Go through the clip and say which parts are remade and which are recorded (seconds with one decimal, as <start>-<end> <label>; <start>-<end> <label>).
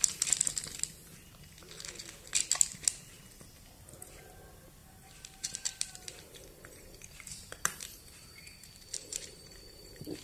0.0-4.8 recorded; 4.8-10.2 remade